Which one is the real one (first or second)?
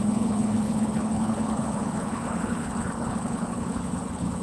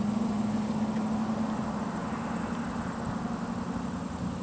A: second